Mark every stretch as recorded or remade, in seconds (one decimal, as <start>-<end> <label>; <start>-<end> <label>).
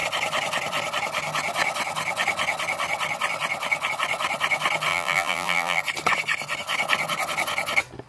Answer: 0.0-4.9 recorded; 4.9-5.8 remade; 5.8-8.1 recorded